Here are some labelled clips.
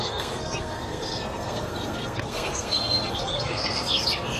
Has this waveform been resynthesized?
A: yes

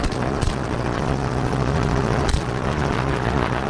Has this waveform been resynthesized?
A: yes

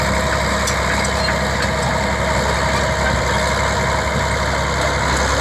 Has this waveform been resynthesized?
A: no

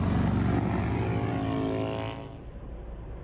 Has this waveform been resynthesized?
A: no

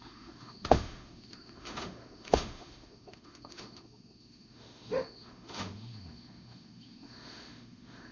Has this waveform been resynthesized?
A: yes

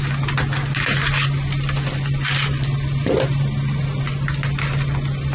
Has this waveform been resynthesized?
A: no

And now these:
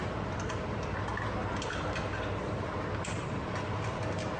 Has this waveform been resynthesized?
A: no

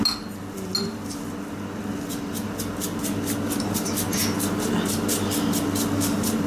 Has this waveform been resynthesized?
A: no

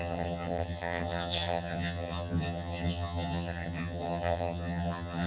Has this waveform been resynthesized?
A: yes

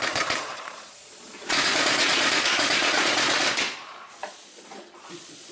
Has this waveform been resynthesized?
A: yes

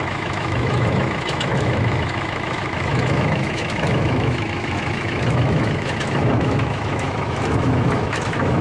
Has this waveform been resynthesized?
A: yes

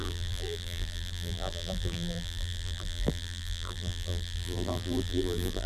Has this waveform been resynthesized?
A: yes